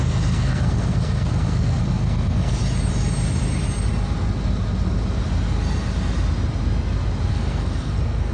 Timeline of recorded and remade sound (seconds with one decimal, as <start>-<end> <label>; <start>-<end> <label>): 0.0-2.6 remade; 2.6-7.3 recorded; 7.3-8.3 remade